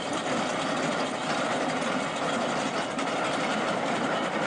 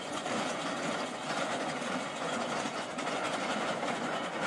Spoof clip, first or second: second